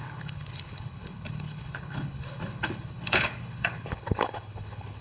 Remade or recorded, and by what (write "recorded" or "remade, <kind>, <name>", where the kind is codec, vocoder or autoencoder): remade, codec, HILCodec